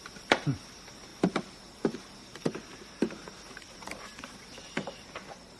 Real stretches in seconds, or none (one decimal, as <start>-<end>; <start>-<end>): 1.1-1.6